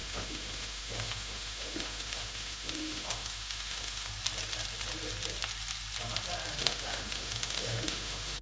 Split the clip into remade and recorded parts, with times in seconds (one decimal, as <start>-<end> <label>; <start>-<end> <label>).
0.0-4.1 remade; 4.1-6.6 recorded; 6.6-8.4 remade